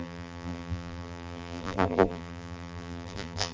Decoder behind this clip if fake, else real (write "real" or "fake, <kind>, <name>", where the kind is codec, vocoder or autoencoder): fake, vocoder, BigVGAN v2